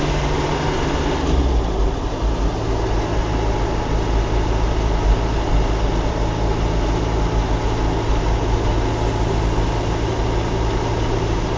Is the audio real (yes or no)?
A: yes